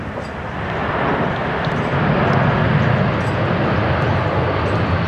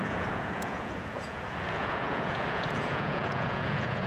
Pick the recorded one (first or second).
first